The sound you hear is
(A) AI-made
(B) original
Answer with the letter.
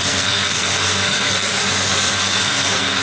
A